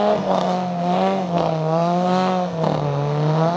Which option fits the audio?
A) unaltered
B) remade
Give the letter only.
B